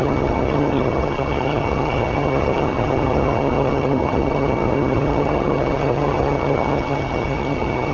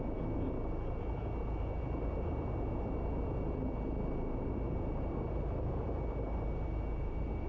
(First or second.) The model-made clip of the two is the first